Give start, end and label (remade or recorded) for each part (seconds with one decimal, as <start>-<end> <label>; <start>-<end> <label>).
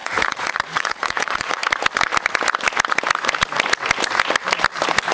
0.0-1.6 remade; 1.6-5.1 recorded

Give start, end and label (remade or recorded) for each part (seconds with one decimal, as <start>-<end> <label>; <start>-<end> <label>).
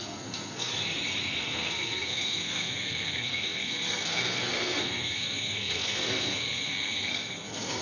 0.0-0.7 remade; 0.7-1.4 recorded; 1.4-7.8 remade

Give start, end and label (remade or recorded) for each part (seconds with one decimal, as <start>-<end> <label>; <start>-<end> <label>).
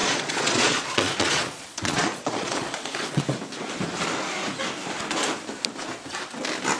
0.0-3.2 remade; 3.2-6.8 recorded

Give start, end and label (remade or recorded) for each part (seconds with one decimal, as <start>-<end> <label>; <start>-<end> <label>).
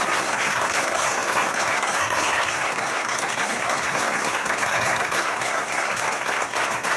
0.0-7.0 remade